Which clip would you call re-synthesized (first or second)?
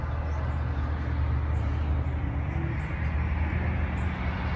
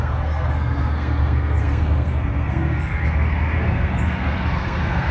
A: second